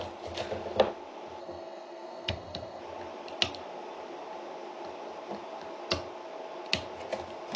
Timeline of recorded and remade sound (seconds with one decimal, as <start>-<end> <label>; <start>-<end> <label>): 0.0-1.4 recorded; 1.4-2.8 remade; 2.8-7.6 recorded